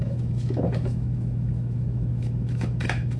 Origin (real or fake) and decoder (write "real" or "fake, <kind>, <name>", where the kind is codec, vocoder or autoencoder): fake, autoencoder, DAC-VAE